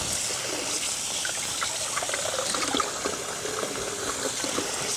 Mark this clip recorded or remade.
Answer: recorded